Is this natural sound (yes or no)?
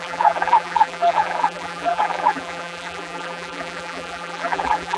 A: no